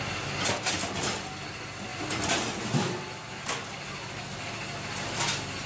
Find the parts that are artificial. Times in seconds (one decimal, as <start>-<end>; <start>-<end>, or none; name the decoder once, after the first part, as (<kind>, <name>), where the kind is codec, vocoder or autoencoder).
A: 1.9-3.5 (vocoder, BigVGAN v2)